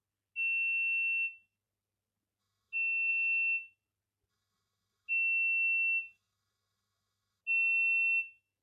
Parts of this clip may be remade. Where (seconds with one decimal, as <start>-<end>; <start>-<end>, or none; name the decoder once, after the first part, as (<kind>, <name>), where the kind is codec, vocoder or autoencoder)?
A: 2.4-3.1 (autoencoder, DAC-VAE); 4.3-7.4